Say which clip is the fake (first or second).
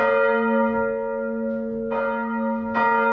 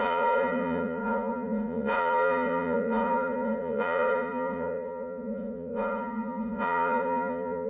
second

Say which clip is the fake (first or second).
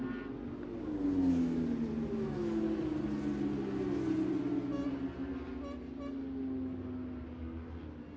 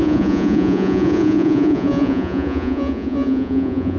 second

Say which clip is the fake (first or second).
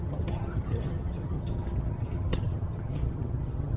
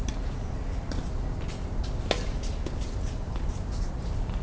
first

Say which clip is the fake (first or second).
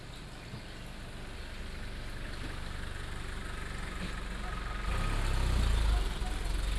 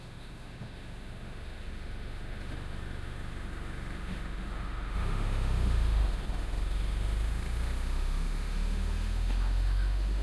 second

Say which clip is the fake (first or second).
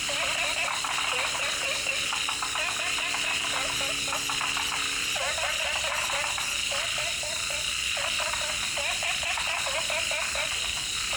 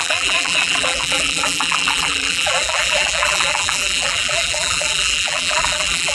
second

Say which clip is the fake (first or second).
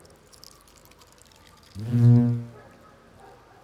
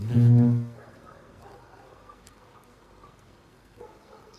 second